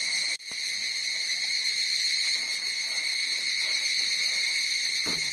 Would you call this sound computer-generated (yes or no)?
no